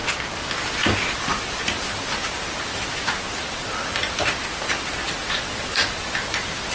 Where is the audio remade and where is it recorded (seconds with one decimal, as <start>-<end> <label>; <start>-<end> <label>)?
0.0-0.6 recorded; 0.6-6.7 remade